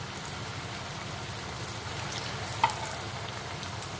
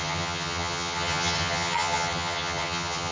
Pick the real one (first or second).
first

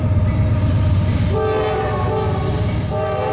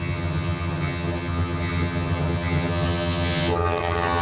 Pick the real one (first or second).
first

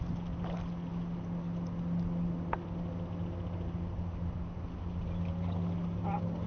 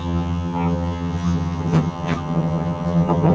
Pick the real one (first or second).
first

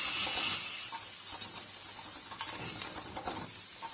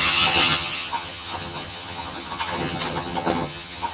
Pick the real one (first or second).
first